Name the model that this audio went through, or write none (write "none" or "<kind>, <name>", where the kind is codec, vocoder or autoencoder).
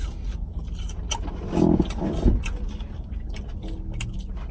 none